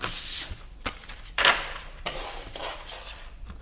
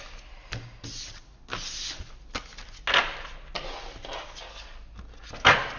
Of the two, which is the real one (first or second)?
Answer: second